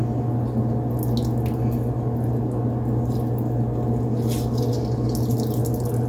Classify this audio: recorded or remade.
recorded